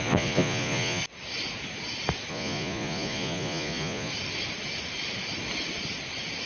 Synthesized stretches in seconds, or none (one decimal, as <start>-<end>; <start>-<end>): 0.0-1.0; 2.3-4.1